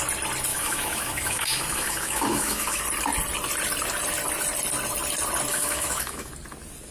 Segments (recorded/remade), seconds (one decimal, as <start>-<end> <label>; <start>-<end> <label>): 0.0-0.5 recorded; 0.5-2.8 remade; 2.8-5.5 recorded; 5.5-6.3 remade; 6.3-6.9 recorded